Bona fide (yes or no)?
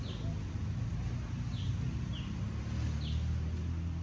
yes